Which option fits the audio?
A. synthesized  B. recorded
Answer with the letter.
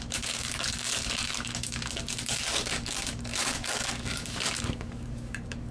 A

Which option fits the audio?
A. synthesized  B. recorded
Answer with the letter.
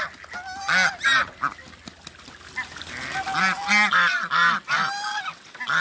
B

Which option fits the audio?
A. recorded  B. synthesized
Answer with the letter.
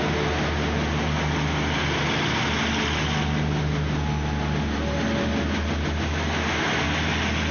A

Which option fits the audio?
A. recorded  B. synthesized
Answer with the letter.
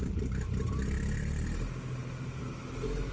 A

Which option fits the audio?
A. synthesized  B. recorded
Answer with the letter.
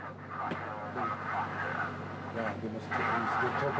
B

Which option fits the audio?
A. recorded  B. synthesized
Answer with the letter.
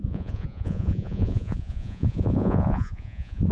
B